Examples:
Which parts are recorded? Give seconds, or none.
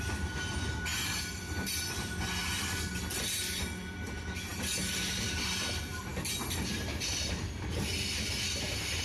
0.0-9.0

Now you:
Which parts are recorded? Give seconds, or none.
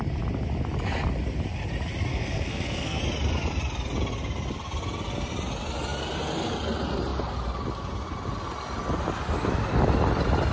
0.0-2.1; 3.0-10.5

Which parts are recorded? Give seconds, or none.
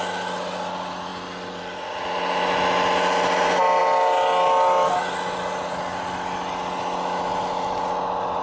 0.0-8.4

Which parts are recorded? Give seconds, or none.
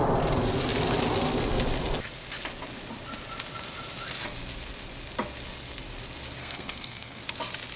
0.0-6.4; 7.2-7.8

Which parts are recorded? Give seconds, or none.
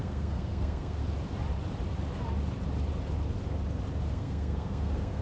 1.0-4.1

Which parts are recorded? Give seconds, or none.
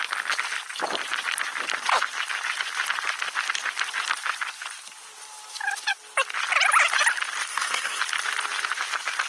0.0-7.5; 8.0-9.3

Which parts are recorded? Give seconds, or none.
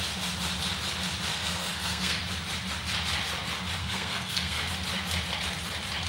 0.0-1.3; 2.2-3.8; 4.7-6.1